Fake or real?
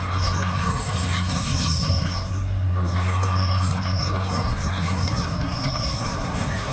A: fake